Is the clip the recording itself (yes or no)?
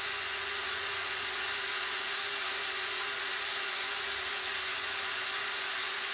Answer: no